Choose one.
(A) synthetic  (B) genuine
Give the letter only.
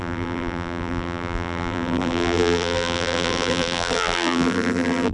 A